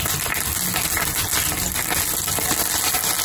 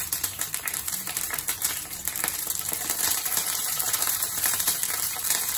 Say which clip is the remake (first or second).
second